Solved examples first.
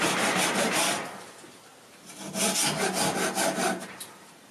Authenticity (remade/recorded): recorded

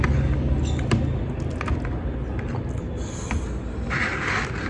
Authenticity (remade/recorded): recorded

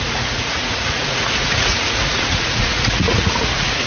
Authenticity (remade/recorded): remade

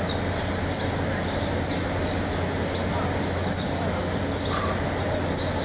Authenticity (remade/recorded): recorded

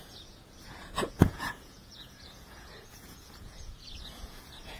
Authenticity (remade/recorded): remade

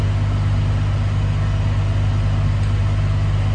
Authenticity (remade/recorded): recorded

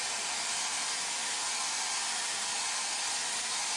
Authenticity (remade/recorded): recorded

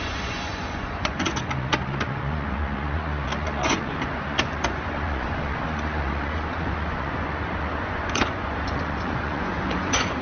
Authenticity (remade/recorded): remade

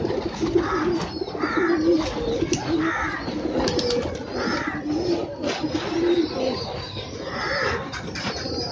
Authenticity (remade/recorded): recorded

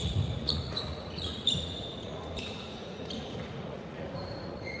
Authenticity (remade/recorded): remade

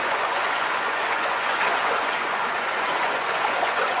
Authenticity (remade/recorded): remade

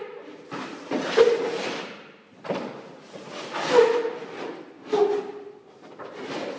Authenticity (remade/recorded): recorded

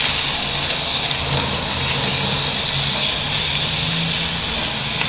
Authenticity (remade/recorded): recorded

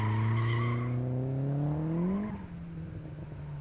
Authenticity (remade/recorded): recorded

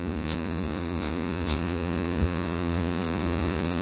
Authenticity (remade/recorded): remade